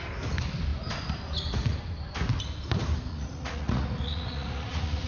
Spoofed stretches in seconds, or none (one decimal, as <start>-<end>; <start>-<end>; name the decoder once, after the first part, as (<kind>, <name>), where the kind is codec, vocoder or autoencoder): 3.1-5.1 (vocoder, Vocos)